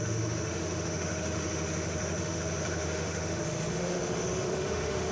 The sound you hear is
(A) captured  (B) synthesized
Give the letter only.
B